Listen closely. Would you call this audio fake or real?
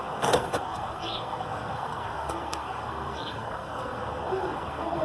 fake